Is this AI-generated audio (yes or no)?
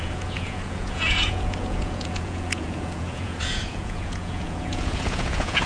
yes